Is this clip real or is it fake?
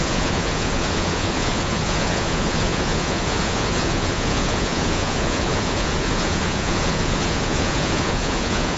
fake